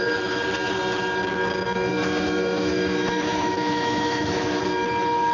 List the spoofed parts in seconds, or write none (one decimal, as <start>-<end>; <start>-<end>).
1.9-4.6